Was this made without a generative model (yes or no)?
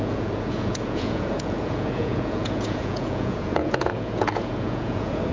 no